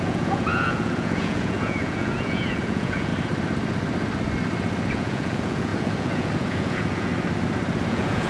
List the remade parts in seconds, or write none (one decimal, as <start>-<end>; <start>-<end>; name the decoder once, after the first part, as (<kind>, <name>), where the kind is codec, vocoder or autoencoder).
0.0-3.1 (vocoder, Vocos); 4.9-7.1; 7.9-8.3